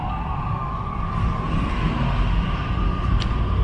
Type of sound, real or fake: real